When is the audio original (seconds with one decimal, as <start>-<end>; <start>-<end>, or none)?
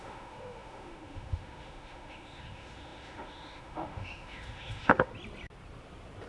5.1-6.3